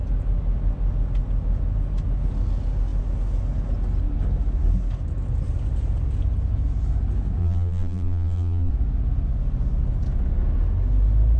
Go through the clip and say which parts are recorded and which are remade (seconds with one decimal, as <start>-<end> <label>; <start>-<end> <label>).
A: 0.0-7.4 recorded; 7.4-8.7 remade; 8.7-11.4 recorded